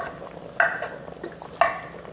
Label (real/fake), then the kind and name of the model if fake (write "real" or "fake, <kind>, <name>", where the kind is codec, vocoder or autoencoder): real